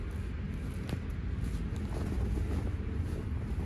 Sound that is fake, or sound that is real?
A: real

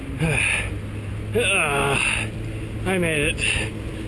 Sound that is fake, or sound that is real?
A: real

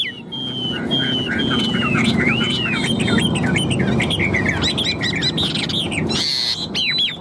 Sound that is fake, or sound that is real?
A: real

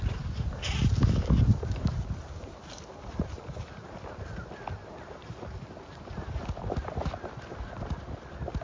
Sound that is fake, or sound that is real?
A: real